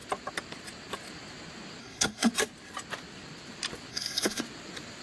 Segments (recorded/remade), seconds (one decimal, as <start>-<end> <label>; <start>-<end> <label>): 0.0-1.8 recorded; 1.8-2.3 remade; 2.3-3.9 recorded; 3.9-4.4 remade; 4.4-5.0 recorded

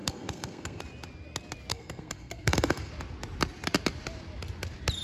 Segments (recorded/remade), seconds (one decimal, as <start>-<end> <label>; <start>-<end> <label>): 0.0-0.8 remade; 0.8-1.7 recorded; 1.7-2.9 remade; 2.9-5.0 recorded

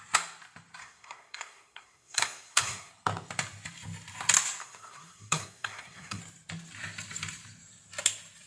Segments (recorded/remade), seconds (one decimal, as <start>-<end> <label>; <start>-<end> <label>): 0.0-0.8 recorded; 0.8-2.9 remade; 2.9-4.6 recorded; 4.6-6.2 remade; 6.2-8.5 recorded

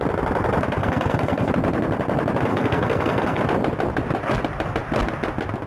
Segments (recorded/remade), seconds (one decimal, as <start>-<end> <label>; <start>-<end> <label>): 0.0-0.8 recorded; 0.8-1.5 remade; 1.5-2.5 recorded; 2.5-3.4 remade; 3.4-5.7 recorded

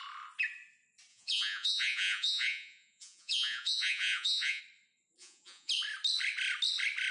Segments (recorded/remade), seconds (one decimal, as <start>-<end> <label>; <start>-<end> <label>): 0.0-1.1 recorded; 1.1-4.6 remade; 4.6-5.2 recorded; 5.2-5.7 remade; 5.7-7.1 recorded

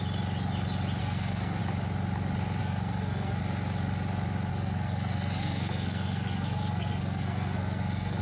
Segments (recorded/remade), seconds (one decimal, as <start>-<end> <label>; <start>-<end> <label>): 0.0-1.0 recorded; 1.0-1.6 remade; 1.6-2.6 recorded; 2.6-3.4 remade; 3.4-4.5 recorded; 4.5-8.2 remade